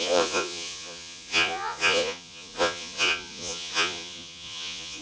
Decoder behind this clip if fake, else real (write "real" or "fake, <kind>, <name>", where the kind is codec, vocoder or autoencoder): fake, vocoder, Vocos